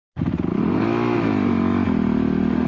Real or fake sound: real